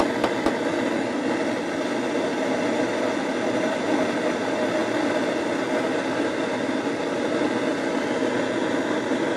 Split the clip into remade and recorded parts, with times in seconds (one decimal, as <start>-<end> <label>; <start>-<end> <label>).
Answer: 0.0-9.4 recorded